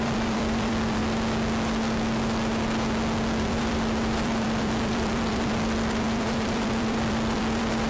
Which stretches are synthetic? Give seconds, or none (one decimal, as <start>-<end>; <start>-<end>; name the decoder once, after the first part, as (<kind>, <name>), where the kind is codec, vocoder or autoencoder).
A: 0.0-1.0 (vocoder, BigVGAN v2); 3.4-7.9